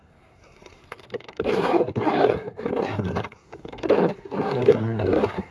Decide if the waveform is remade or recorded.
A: remade